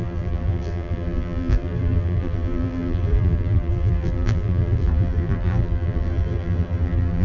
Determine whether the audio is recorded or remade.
remade